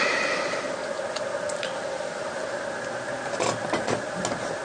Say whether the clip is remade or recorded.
recorded